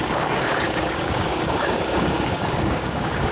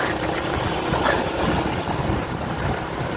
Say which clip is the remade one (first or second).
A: first